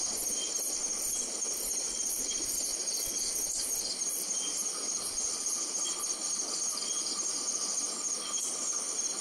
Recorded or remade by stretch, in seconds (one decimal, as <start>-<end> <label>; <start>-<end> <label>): 0.0-2.7 recorded; 2.7-3.2 remade; 3.2-4.6 recorded; 4.6-5.9 remade; 5.9-9.2 recorded